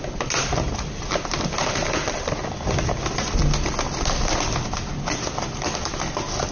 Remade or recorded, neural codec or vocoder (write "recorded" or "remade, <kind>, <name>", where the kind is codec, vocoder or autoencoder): recorded